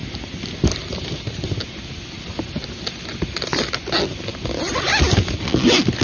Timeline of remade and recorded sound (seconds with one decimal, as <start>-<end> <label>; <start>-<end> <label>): 0.0-6.0 recorded